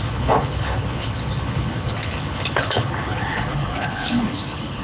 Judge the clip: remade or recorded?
remade